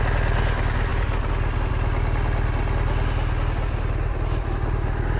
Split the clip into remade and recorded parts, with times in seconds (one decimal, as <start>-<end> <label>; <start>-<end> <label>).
0.0-5.2 recorded